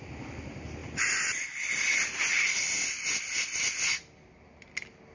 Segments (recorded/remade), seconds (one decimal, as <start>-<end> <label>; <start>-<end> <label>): 0.0-0.8 recorded; 0.8-1.8 remade; 1.8-5.1 recorded